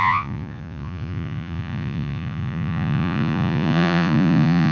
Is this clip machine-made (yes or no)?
yes